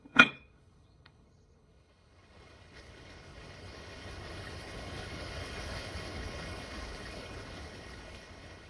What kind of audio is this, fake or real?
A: fake